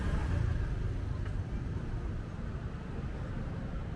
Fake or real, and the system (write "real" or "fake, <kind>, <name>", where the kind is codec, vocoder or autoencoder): real